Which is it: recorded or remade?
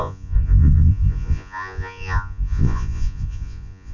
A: remade